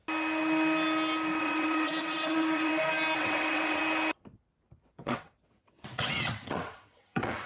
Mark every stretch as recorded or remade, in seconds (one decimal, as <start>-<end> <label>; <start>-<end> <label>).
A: 0.0-1.4 recorded; 1.4-2.7 remade; 2.7-3.2 recorded; 3.2-3.8 remade; 3.8-4.9 recorded; 4.9-7.5 remade